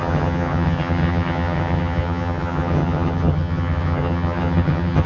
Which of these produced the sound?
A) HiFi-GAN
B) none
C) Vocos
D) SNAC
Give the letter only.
A